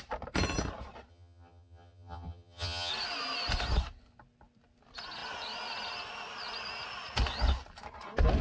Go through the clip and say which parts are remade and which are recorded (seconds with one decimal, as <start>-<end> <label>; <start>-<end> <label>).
0.0-1.1 recorded; 1.1-2.9 remade; 2.9-8.4 recorded